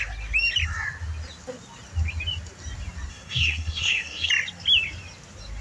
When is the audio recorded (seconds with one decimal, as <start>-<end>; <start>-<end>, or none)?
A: 0.0-3.1; 4.3-5.6